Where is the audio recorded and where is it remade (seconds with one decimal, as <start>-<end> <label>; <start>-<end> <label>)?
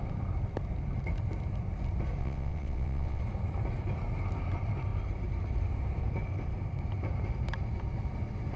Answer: 0.0-2.2 recorded; 2.2-3.2 remade; 3.2-8.6 recorded